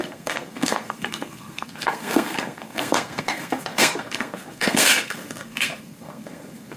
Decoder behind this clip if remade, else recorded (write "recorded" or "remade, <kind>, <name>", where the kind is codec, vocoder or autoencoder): remade, codec, SNAC